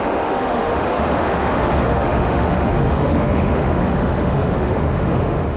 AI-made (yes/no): yes